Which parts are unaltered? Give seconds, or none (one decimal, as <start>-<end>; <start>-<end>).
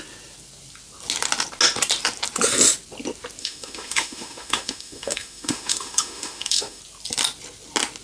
0.0-3.4; 6.8-8.0